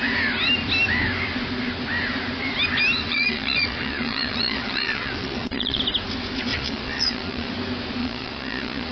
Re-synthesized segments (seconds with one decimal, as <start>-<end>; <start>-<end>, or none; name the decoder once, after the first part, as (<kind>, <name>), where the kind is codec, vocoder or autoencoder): 3.0-5.8 (vocoder, Vocos); 6.5-7.5; 8.0-8.9